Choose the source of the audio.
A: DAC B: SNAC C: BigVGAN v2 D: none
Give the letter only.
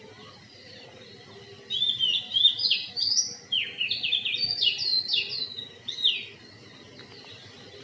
D